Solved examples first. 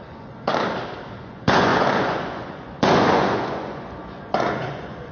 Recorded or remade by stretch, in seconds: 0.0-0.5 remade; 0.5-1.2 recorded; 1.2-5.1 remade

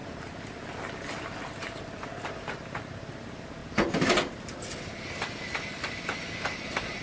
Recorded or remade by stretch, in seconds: 0.0-7.0 recorded

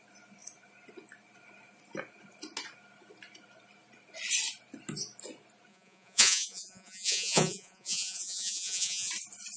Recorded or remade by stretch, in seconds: 0.0-5.7 recorded; 5.7-9.1 remade; 9.1-9.6 recorded

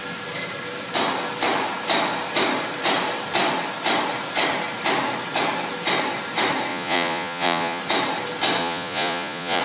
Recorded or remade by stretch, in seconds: 0.0-6.7 recorded; 6.7-7.8 remade; 7.8-8.6 recorded; 8.6-9.6 remade

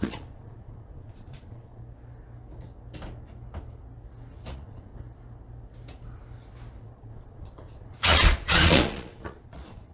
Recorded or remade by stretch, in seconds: 0.0-1.8 remade; 1.8-4.5 recorded; 4.5-4.9 remade; 4.9-6.8 recorded; 6.8-9.9 remade

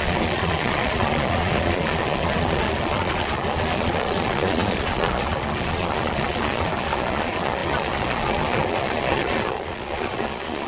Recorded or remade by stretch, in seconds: 0.0-10.7 remade

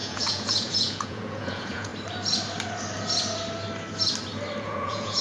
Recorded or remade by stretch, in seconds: 0.0-1.9 remade; 1.9-4.6 recorded; 4.6-5.2 remade